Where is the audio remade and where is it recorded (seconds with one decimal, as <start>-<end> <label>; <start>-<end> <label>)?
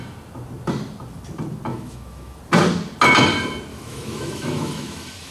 0.0-1.7 recorded; 1.7-2.4 remade; 2.4-3.7 recorded; 3.7-5.3 remade